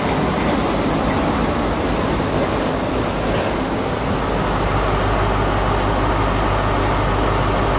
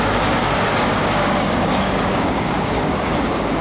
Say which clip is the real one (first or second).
first